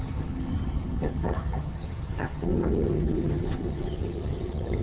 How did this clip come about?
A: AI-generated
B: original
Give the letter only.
A